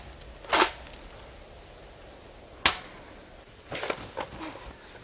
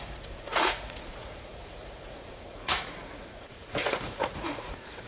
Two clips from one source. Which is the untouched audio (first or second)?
first